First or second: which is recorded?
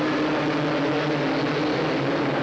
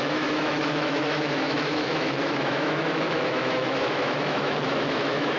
first